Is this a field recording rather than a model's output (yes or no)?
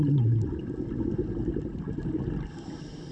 yes